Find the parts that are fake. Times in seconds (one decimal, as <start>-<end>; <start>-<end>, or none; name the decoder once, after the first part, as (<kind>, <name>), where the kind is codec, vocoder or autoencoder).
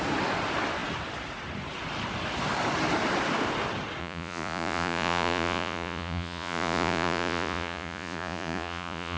4.0-9.2 (vocoder, Vocos)